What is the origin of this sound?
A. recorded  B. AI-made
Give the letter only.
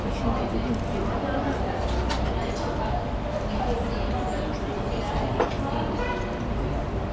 A